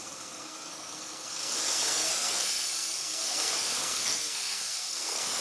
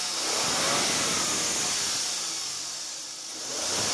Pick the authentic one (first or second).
second